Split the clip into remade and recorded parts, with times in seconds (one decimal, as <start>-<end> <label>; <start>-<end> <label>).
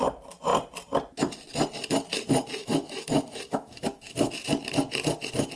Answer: 0.0-2.6 recorded; 2.6-4.3 remade; 4.3-5.6 recorded